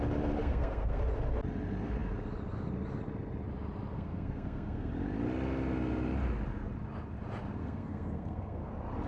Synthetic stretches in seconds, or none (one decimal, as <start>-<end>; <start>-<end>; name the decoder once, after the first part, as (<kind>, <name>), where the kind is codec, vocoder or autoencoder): 0.4-1.0 (codec, SNAC); 3.9-4.9; 7.6-8.7

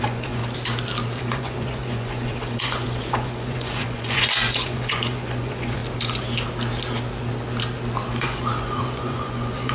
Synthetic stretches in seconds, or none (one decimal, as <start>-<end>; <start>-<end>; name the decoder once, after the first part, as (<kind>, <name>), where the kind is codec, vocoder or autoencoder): 0.0-0.4 (vocoder, Vocos); 1.2-5.8; 8.1-9.7

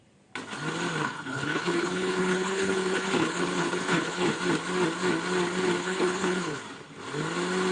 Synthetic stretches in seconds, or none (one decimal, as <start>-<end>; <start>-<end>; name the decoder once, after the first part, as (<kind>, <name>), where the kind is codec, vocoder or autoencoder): 1.0-4.4 (codec, HILCodec); 5.8-6.6

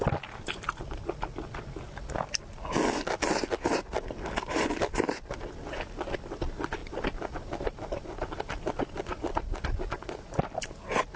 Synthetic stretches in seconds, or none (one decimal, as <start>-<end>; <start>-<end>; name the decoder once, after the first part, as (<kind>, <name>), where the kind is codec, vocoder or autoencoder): none

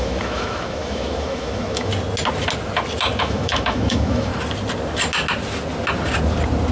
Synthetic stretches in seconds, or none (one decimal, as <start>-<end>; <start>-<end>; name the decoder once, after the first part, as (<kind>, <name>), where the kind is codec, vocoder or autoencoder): 0.0-1.9 (autoencoder, DAC-VAE); 3.2-4.3

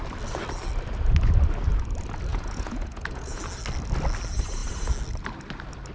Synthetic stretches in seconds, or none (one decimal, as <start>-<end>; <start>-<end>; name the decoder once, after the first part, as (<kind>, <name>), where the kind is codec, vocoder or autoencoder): 2.3-3.4 (vocoder, Vocos)

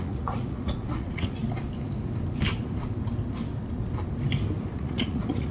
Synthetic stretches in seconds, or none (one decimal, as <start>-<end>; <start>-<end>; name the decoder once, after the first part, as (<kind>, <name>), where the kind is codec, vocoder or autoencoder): 0.0-1.4 (vocoder, Vocos); 4.7-5.5